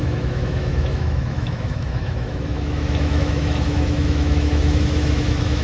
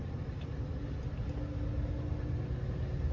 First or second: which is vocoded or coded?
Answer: first